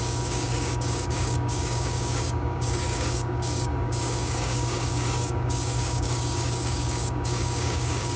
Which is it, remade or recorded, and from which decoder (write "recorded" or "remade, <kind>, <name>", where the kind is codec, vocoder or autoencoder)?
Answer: remade, codec, DAC